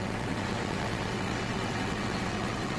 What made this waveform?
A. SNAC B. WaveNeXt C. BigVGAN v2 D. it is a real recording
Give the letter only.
B